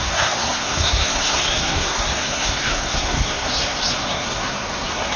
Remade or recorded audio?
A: remade